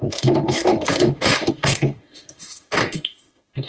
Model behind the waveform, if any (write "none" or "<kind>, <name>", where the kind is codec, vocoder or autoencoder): autoencoder, DAC-VAE